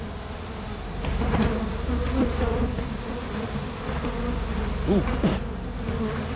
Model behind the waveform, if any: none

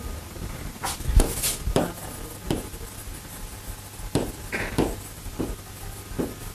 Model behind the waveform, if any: none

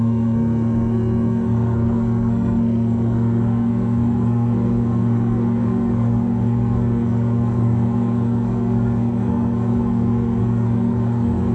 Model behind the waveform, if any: codec, SNAC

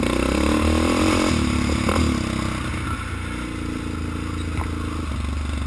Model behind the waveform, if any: none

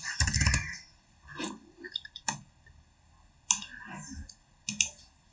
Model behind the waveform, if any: none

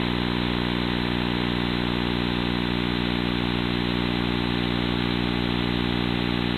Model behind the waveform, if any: none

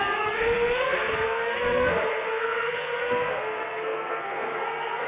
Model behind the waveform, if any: codec, SNAC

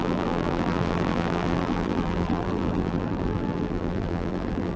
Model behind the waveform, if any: vocoder, BigVGAN v2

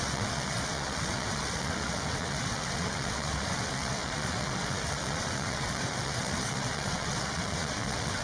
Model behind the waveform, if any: vocoder, WaveNeXt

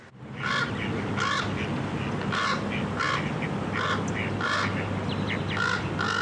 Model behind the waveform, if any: none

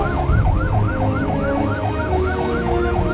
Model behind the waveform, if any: autoencoder, DAC-VAE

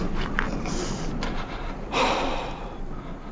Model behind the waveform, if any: none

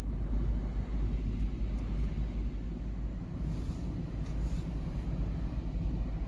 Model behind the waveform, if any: none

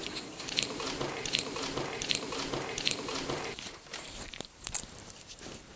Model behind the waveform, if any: vocoder, BigVGAN v2